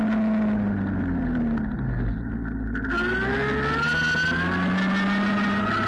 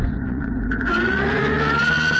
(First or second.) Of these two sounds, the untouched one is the first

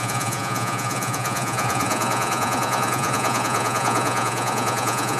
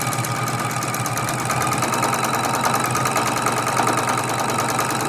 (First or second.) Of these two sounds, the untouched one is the second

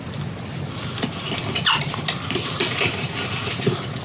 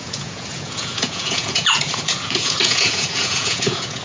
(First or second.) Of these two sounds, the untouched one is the first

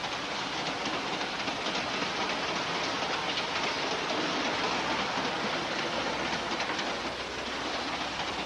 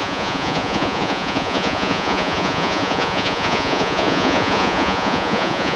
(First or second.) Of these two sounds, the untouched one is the first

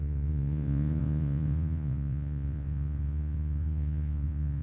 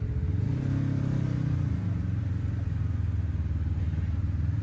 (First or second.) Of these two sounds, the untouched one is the second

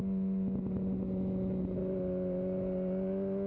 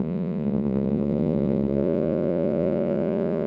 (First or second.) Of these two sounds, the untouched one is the first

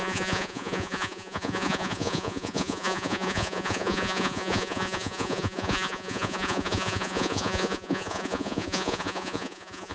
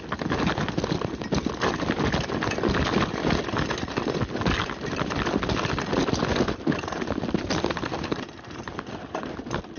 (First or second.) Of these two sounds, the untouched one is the second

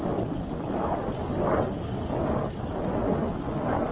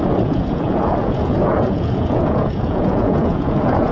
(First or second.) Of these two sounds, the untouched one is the first